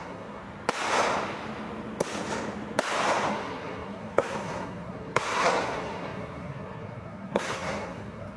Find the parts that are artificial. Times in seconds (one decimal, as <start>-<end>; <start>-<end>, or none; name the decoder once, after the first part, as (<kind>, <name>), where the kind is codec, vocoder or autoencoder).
0.0-0.4 (codec, SNAC); 3.3-8.4